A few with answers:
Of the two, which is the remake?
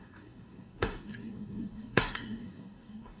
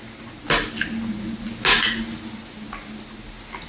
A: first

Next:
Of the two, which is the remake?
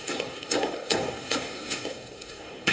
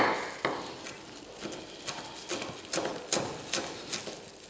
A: first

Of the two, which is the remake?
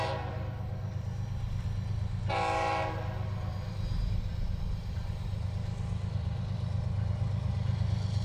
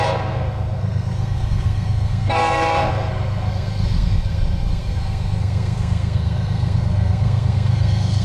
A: second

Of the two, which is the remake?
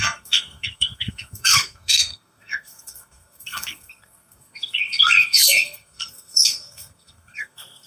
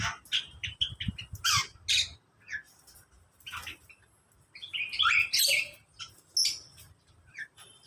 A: first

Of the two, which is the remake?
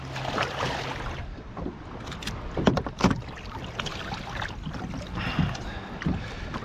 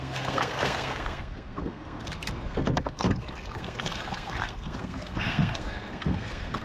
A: second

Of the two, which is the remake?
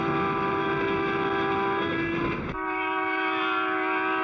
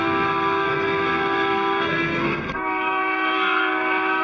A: second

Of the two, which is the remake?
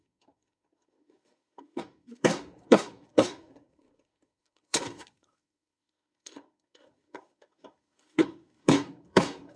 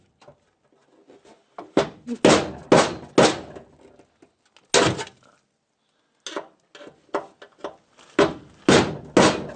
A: first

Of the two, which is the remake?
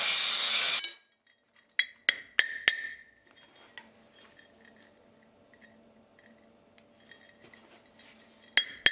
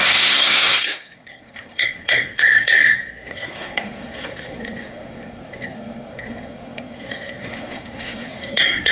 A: second